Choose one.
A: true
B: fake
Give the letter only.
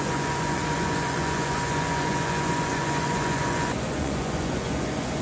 B